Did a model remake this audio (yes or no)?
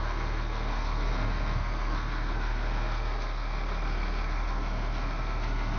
yes